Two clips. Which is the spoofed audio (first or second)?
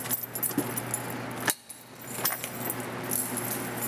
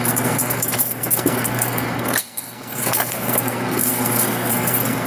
second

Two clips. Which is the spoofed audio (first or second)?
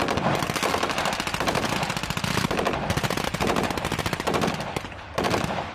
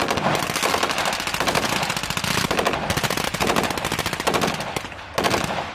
first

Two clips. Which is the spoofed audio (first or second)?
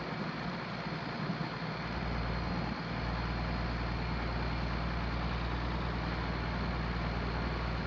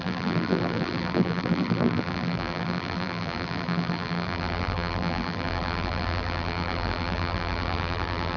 second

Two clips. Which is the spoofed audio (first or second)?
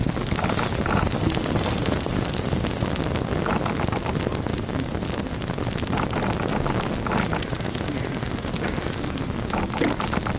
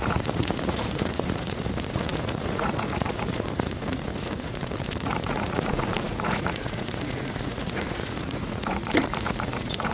second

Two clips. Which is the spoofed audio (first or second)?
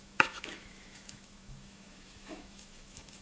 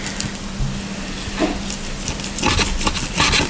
first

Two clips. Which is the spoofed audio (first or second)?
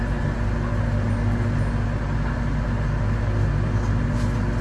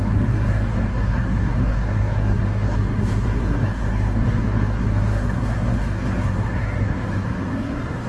second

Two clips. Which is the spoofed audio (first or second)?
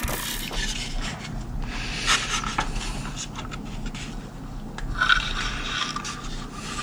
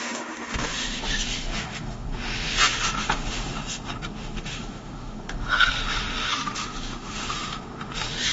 second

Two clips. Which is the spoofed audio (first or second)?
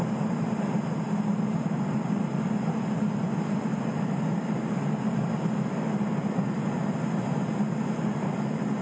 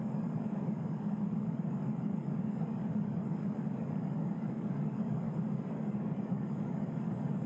second